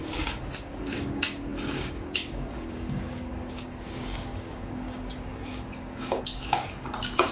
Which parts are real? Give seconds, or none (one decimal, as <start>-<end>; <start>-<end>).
none